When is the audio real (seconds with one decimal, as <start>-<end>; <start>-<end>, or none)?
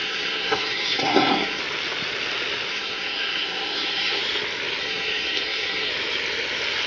1.6-2.7; 4.2-4.8; 5.9-6.9